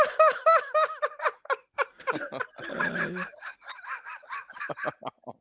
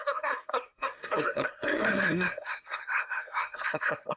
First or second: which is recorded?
first